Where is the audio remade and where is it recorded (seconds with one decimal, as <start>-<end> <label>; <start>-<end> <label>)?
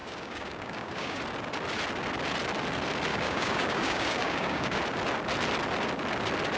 0.0-1.2 remade; 1.2-3.1 recorded; 3.1-4.8 remade; 4.8-6.6 recorded